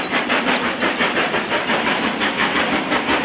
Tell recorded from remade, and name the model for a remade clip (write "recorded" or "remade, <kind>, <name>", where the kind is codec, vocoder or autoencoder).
remade, vocoder, BigVGAN v2